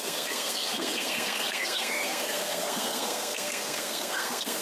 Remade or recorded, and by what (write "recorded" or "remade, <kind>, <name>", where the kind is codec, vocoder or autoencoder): remade, codec, SNAC